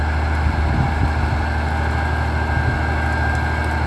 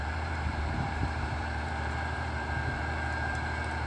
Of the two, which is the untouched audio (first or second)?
first